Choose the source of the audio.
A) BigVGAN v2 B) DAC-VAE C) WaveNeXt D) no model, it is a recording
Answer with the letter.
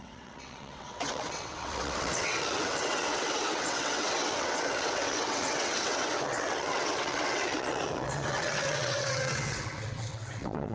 C